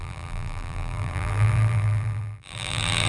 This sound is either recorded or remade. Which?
remade